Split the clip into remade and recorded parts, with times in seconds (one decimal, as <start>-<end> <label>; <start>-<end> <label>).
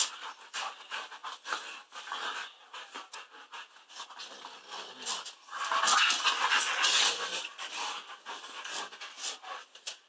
0.0-10.1 recorded